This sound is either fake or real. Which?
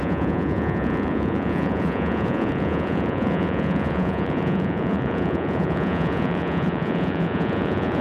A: fake